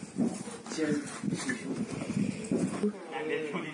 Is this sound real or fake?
real